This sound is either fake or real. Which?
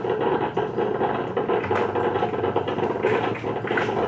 real